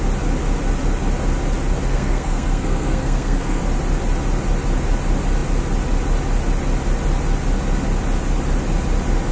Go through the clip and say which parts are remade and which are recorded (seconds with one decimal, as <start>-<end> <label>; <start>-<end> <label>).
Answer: 0.0-1.9 recorded; 1.9-3.6 remade; 3.6-9.3 recorded